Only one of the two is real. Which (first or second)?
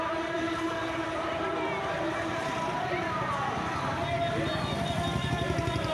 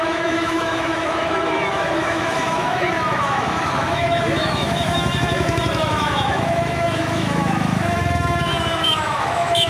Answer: first